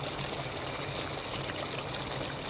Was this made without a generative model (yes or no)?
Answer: yes